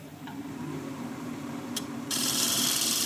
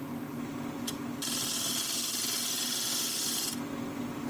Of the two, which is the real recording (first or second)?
second